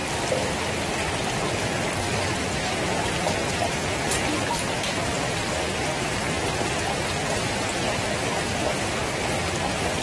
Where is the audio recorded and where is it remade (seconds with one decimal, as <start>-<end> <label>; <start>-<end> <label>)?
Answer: 0.0-2.4 recorded; 2.4-10.0 remade